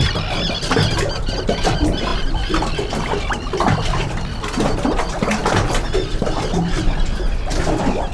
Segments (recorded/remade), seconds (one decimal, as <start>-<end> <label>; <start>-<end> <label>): 0.0-8.1 recorded